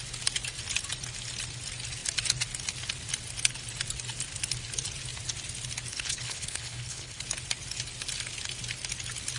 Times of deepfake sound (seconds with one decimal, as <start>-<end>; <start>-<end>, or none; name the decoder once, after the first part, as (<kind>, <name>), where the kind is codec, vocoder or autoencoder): 5.9-7.2 (codec, HILCodec)